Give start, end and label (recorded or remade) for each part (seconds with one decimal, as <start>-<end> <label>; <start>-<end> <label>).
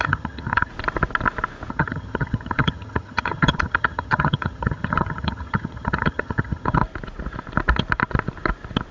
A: 0.0-0.7 remade; 0.7-1.7 recorded; 1.7-6.8 remade; 6.8-8.9 recorded